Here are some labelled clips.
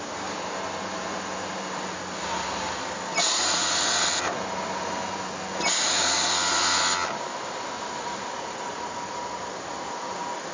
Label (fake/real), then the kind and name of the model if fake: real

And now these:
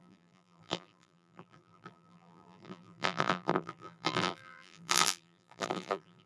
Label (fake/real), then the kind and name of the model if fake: fake, vocoder, BigVGAN v2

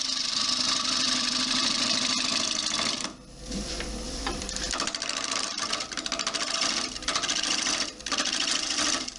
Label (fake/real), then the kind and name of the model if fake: fake, vocoder, BigVGAN v2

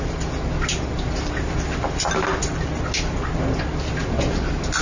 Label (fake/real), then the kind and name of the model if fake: real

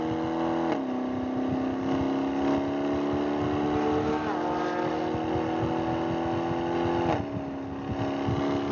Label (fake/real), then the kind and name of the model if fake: real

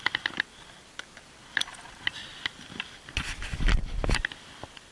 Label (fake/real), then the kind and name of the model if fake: fake, vocoder, BigVGAN v2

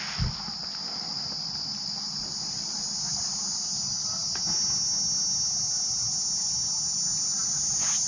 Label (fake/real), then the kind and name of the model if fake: real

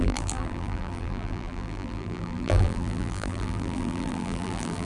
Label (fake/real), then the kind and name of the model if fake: fake, vocoder, BigVGAN v2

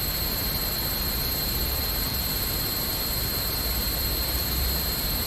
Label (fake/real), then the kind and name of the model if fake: real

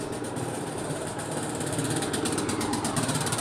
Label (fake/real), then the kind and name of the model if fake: fake, vocoder, BigVGAN v2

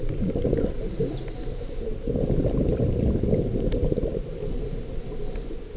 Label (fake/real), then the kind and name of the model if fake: real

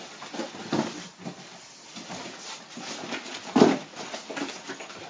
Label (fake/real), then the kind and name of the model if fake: real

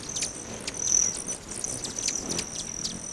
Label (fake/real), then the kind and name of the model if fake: real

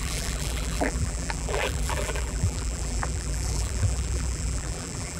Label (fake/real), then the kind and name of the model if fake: fake, vocoder, BigVGAN v2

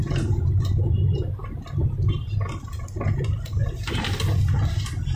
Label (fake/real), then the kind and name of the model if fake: real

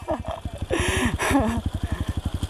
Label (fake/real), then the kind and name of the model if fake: real